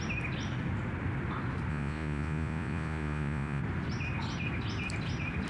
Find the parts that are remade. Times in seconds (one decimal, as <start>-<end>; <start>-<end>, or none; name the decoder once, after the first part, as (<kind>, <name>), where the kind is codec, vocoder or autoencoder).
1.7-3.6 (vocoder, Vocos)